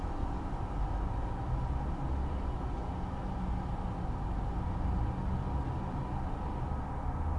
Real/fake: real